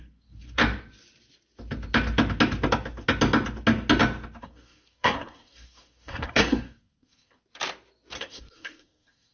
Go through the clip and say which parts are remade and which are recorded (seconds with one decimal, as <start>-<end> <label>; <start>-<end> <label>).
0.0-0.6 remade; 0.6-4.4 recorded; 4.4-7.4 remade; 7.4-8.2 recorded; 8.2-9.3 remade